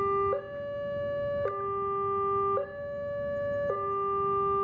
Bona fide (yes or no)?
yes